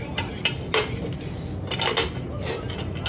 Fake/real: real